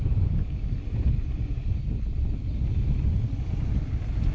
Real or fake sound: real